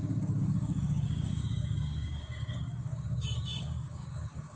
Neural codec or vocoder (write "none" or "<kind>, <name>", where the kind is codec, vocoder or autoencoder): codec, DAC